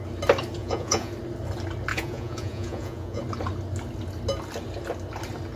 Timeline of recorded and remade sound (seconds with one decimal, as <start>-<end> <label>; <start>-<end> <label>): 0.0-0.6 recorded; 0.6-1.1 remade; 1.1-1.9 recorded; 1.9-3.2 remade; 3.2-5.6 recorded